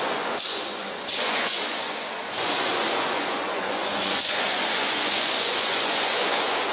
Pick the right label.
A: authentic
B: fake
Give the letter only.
B